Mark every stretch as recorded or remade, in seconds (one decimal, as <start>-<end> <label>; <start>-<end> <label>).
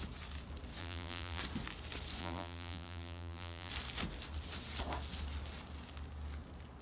0.0-0.8 recorded; 0.8-1.4 remade; 1.4-2.2 recorded; 2.2-3.7 remade; 3.7-6.8 recorded